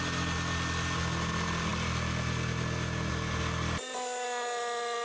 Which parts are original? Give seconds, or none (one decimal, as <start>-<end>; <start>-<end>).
0.0-5.0